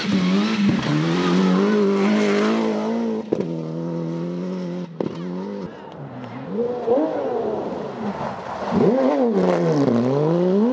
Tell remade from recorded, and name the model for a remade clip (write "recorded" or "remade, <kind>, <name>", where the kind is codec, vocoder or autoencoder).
recorded